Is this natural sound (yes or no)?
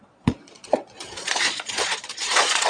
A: no